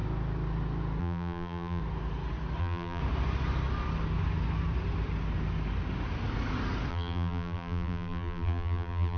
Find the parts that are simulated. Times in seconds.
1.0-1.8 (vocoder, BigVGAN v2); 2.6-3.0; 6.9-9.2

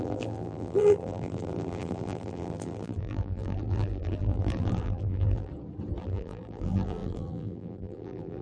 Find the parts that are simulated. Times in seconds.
0.0-5.5 (vocoder, BigVGAN v2); 6.0-8.4

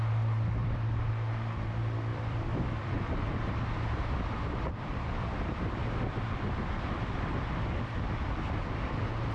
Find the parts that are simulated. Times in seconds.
0.6-1.1 (vocoder, BigVGAN v2); 2.1-7.4

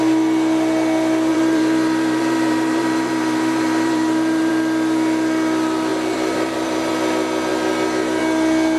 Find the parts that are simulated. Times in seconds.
1.3-4.5 (vocoder, BigVGAN v2); 5.9-6.9

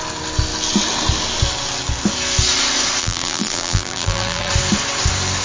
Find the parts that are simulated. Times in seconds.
3.0-4.5 (vocoder, BigVGAN v2)

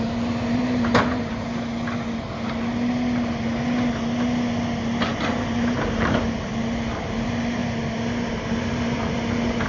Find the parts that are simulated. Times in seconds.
0.0-1.7 (vocoder, BigVGAN v2); 5.2-6.5; 7.1-7.6; 8.3-9.7